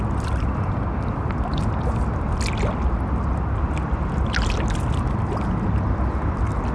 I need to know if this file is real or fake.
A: real